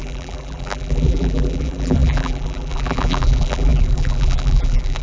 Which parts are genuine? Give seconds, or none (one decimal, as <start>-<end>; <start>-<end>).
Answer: none